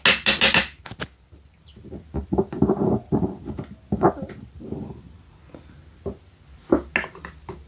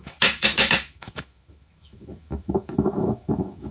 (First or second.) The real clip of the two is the first